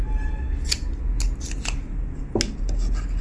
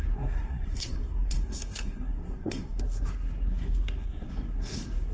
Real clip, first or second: first